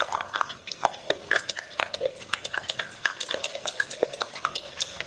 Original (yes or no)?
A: no